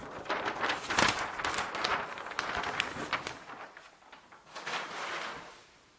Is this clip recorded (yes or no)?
yes